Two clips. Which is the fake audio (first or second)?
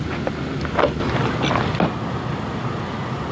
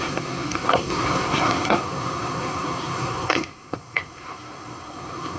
second